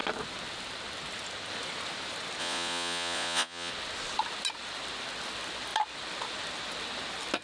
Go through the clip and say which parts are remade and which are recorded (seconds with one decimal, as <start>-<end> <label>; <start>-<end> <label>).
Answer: 0.0-2.4 recorded; 2.4-3.7 remade; 3.7-7.4 recorded